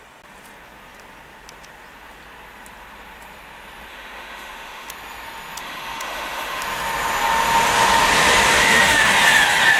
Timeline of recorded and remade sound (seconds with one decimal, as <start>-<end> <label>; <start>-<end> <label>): 0.0-3.9 recorded; 3.9-4.9 remade; 4.9-5.6 recorded; 5.6-6.6 remade; 6.6-8.5 recorded; 8.5-9.1 remade; 9.1-9.8 recorded